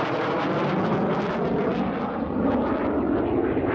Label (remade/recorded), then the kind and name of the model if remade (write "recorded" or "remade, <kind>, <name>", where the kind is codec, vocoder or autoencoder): recorded